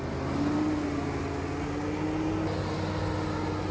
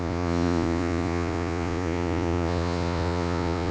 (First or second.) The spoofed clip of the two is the second